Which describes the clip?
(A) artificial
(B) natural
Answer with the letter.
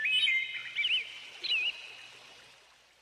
B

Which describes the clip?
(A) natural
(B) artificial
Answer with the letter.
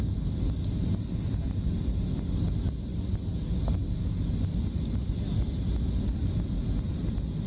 A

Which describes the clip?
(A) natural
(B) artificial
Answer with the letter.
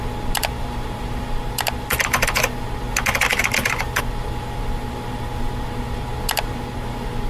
A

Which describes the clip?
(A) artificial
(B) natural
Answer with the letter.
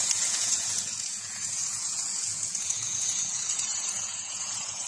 A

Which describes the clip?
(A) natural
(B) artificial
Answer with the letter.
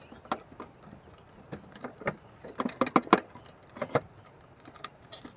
A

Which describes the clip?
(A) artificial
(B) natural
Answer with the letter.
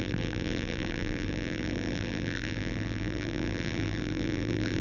A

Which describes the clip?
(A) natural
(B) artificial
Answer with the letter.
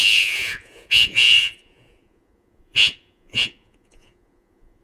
B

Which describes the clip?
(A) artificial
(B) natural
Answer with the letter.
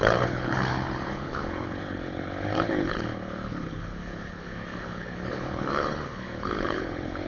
A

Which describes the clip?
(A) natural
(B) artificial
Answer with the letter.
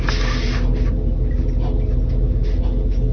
A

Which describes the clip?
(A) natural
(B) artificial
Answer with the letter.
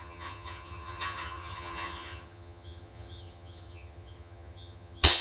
B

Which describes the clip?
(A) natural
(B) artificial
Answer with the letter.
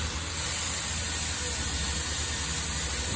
A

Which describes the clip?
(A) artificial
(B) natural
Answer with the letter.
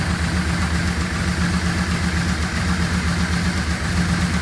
B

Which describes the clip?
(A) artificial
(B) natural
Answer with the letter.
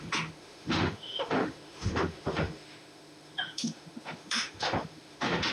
A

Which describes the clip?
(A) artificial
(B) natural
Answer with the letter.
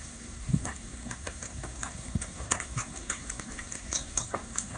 A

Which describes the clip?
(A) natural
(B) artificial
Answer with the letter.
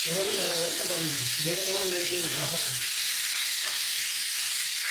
B